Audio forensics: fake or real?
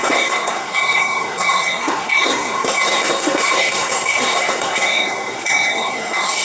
fake